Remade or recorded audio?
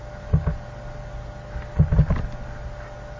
recorded